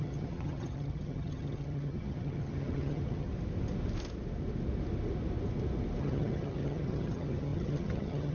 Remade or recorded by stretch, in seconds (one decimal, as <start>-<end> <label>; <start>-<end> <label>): 0.0-3.3 remade; 3.3-6.0 recorded; 6.0-8.3 remade